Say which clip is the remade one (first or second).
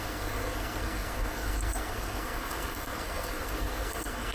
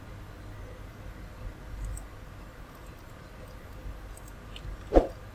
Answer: first